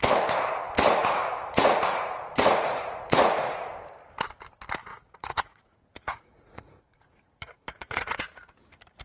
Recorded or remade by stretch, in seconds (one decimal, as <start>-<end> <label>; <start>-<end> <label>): 0.0-1.0 recorded; 1.0-3.7 remade; 3.7-4.9 recorded; 4.9-8.5 remade; 8.5-9.0 recorded